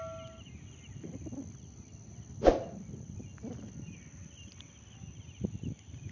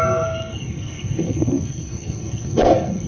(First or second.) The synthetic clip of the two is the second